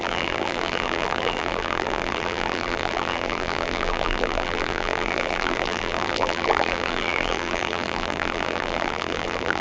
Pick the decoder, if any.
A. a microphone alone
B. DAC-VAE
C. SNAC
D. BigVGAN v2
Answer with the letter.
D